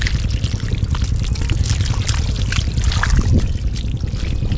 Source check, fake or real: real